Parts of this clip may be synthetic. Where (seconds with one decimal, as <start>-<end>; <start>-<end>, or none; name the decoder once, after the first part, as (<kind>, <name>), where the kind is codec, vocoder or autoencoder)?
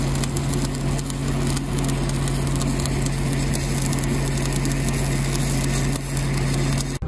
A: none